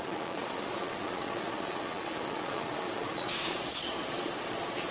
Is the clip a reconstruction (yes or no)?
yes